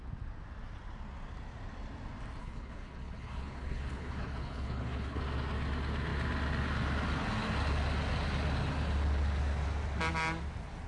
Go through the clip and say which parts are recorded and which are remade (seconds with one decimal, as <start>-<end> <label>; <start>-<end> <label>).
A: 0.0-2.4 recorded; 2.4-5.2 remade; 5.2-10.9 recorded